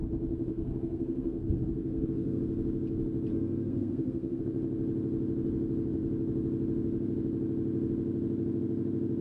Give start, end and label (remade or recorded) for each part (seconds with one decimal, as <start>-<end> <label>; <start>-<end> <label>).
0.0-0.5 recorded; 0.5-2.4 remade; 2.4-3.3 recorded; 3.3-4.4 remade; 4.4-9.2 recorded